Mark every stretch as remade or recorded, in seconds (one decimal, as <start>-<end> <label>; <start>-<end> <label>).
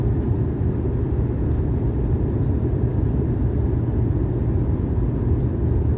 0.0-2.9 remade; 2.9-5.4 recorded; 5.4-6.0 remade